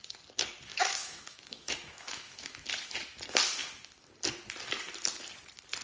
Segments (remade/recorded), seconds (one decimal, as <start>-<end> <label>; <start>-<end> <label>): 0.0-0.7 recorded; 0.7-2.7 remade; 2.7-5.8 recorded